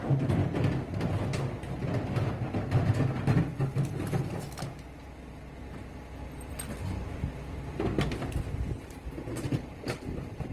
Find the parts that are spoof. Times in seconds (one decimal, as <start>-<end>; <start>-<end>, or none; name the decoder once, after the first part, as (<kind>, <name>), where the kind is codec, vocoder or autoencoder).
none